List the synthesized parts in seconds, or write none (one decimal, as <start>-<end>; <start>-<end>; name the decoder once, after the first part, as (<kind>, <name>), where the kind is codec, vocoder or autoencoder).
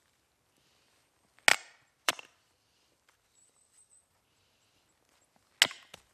1.5-4.0 (vocoder, BigVGAN v2)